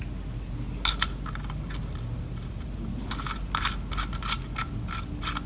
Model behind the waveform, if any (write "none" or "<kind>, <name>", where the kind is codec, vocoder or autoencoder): none